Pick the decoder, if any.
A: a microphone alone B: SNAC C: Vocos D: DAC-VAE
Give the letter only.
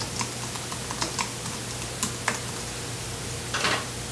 A